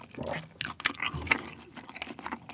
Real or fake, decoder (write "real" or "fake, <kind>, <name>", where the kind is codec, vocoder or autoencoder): real